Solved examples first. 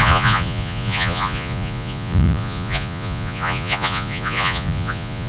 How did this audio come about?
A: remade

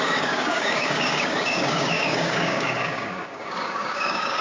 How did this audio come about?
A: remade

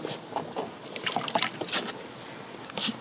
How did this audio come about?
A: recorded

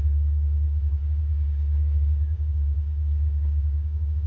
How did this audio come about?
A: remade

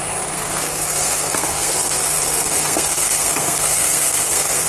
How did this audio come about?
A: remade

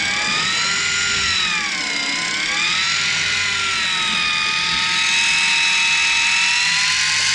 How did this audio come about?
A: recorded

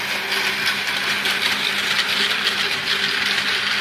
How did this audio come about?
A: recorded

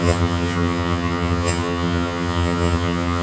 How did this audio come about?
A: remade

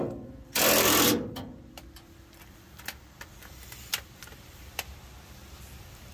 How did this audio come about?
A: remade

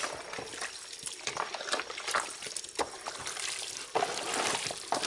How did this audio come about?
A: recorded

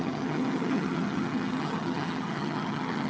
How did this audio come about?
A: remade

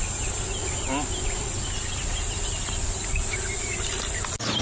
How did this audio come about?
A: recorded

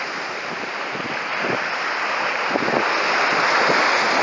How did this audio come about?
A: recorded